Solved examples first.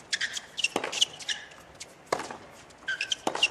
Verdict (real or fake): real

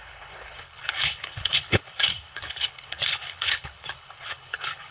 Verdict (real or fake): fake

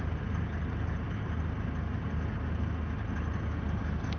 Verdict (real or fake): real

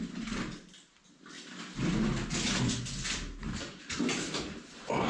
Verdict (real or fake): real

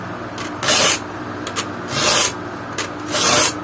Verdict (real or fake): real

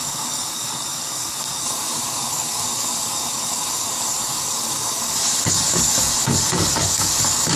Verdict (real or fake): fake